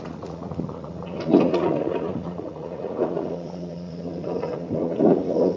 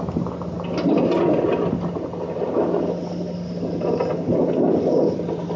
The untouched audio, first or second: second